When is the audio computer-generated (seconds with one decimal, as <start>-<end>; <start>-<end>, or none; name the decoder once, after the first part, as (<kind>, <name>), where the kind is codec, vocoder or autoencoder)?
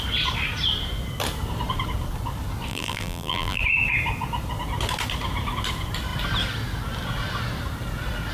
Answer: 2.7-3.6 (vocoder, BigVGAN v2)